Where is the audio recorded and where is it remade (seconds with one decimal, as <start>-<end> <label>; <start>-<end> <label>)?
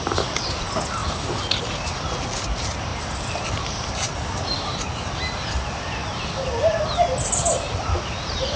0.0-8.6 recorded